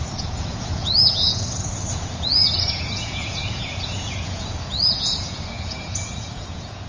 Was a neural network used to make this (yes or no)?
yes